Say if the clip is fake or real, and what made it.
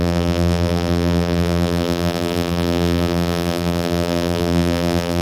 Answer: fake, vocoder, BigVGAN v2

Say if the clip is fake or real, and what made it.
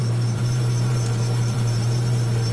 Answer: fake, vocoder, BigVGAN v2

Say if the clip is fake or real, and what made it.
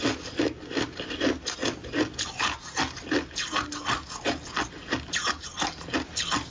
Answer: real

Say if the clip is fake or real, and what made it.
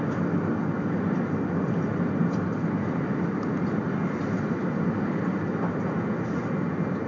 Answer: real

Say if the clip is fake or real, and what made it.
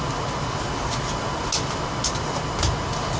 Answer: real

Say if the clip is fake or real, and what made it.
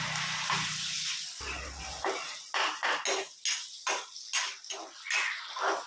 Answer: real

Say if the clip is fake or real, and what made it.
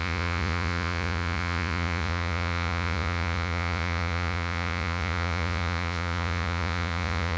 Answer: fake, vocoder, Vocos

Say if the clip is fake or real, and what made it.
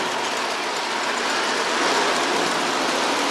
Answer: real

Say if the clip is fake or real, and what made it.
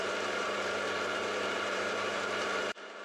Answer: fake, vocoder, BigVGAN v2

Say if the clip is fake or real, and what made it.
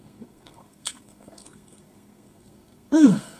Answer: fake, codec, SNAC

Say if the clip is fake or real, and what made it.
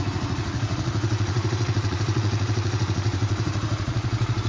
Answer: fake, vocoder, Vocos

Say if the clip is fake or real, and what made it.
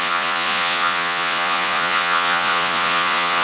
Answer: fake, vocoder, Vocos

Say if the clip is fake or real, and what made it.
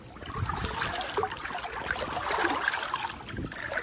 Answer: real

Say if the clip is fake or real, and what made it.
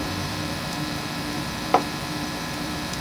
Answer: fake, vocoder, BigVGAN v2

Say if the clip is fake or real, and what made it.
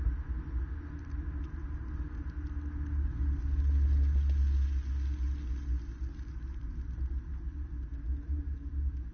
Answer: real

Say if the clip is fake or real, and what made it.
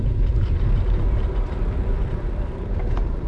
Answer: fake, vocoder, BigVGAN v2